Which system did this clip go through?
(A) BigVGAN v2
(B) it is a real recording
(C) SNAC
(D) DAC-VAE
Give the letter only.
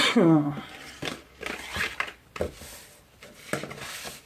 B